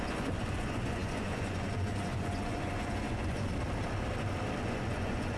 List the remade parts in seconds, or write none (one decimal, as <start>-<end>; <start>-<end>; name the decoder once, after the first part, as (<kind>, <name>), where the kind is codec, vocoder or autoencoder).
0.0-3.5 (vocoder, Vocos); 4.6-5.4